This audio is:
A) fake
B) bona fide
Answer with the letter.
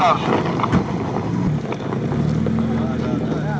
B